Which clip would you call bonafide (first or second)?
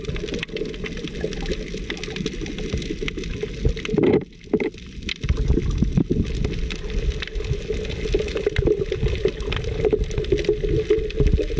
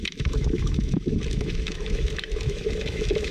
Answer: first